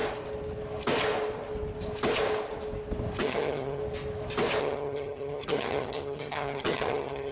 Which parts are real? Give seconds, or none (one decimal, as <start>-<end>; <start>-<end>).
0.0-3.2; 3.8-4.6